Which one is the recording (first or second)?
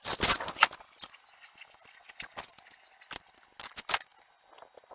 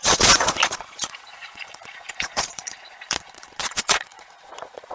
first